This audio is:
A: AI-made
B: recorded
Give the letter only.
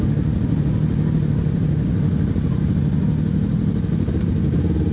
B